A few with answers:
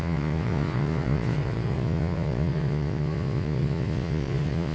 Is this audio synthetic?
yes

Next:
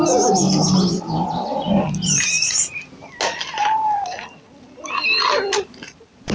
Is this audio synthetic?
no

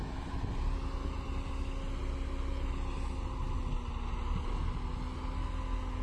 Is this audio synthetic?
no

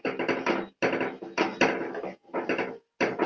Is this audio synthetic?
no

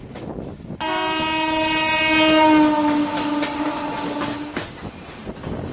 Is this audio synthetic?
no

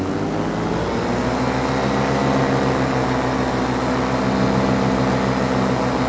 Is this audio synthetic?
no